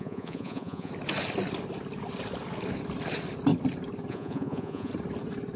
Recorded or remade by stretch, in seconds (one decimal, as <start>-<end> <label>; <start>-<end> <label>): 0.0-0.9 remade; 0.9-4.1 recorded; 4.1-4.9 remade; 4.9-5.6 recorded